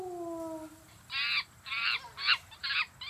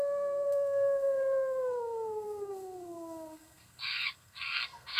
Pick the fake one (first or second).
second